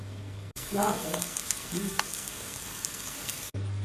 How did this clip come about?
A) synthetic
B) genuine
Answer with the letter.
A